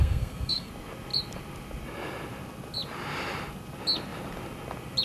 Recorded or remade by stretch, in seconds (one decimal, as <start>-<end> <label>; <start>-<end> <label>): 0.0-0.7 remade; 0.7-5.0 recorded